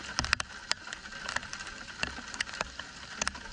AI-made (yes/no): no